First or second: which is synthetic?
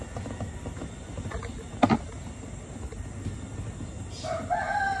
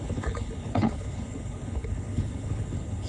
second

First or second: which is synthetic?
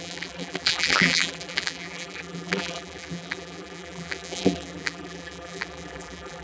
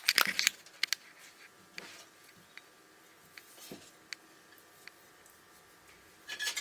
first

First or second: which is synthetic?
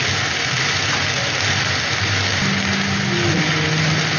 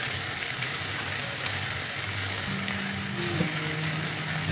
second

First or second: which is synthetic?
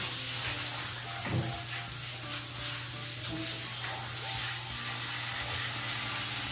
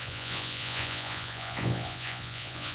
second